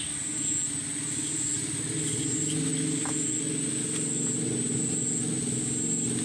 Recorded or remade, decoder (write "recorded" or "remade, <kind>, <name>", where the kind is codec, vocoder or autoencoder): recorded